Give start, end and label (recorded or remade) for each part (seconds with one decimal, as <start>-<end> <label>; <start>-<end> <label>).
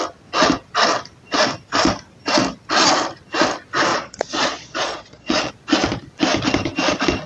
0.0-3.9 recorded; 3.9-5.5 remade; 5.5-7.3 recorded